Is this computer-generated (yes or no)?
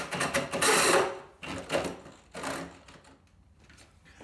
no